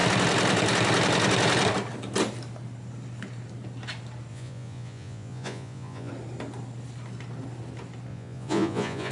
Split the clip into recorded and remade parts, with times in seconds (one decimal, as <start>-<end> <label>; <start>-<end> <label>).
0.0-4.3 recorded; 4.3-6.1 remade; 6.1-8.1 recorded; 8.1-9.1 remade